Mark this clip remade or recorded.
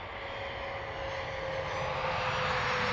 recorded